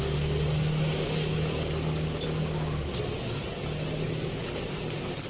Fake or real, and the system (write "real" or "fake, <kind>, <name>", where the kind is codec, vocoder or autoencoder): real